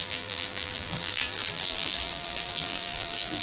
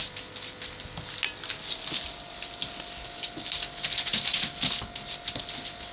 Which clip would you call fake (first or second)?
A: first